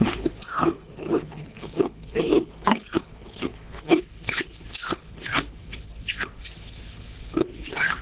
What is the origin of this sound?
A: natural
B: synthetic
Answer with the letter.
B